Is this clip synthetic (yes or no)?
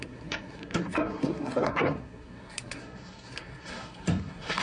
yes